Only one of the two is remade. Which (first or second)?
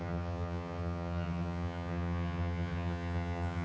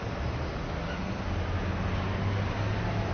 first